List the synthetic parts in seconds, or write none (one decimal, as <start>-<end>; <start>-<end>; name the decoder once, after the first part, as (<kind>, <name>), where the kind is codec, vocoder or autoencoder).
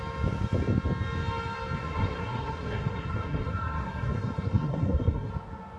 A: 1.8-5.3 (codec, SNAC)